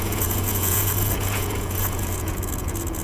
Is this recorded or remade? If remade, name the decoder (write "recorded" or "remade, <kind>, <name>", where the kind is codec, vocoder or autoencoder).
remade, vocoder, Vocos